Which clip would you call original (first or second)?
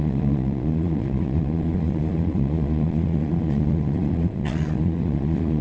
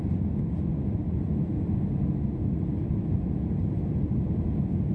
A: second